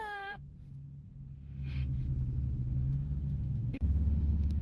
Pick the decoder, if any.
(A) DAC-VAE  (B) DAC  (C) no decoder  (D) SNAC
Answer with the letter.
A